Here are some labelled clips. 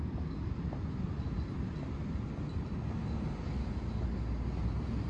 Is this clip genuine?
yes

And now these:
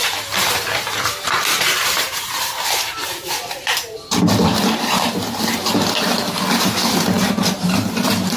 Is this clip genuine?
no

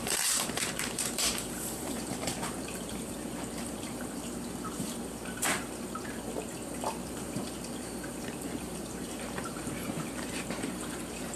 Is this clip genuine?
no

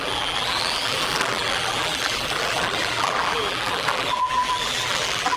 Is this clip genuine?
no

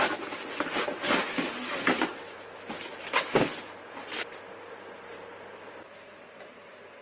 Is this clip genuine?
yes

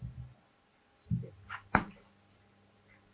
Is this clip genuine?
yes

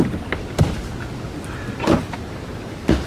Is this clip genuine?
yes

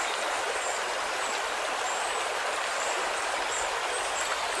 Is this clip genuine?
no